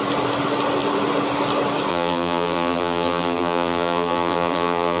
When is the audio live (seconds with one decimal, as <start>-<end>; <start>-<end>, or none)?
0.0-1.9